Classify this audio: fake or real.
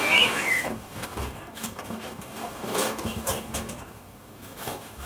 fake